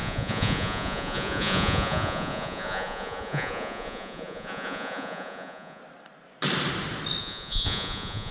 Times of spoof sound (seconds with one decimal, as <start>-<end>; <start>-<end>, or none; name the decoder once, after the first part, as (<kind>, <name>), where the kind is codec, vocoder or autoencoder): 0.0-5.8 (vocoder, Vocos); 7.2-8.3